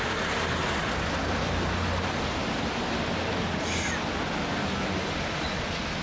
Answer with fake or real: real